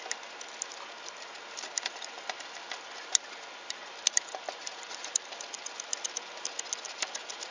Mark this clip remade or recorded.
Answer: remade